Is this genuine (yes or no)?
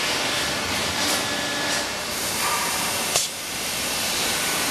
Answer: no